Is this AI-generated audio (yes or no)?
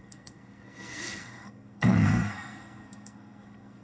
yes